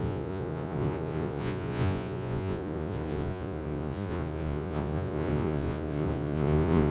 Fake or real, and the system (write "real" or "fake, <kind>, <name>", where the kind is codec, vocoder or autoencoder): fake, vocoder, Vocos